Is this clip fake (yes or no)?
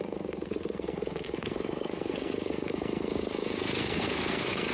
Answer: yes